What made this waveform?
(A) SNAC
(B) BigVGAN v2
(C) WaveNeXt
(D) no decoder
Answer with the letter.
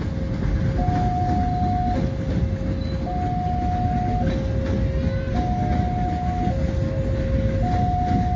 D